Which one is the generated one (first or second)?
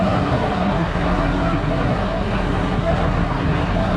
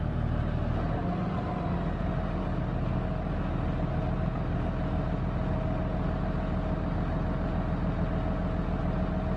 first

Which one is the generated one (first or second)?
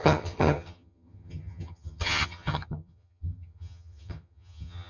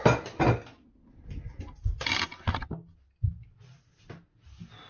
first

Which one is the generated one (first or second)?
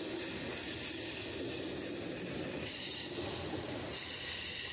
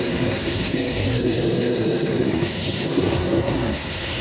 second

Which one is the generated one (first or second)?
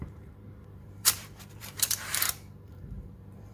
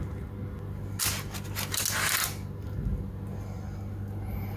first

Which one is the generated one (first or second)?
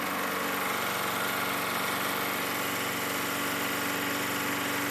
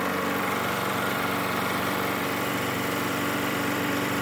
second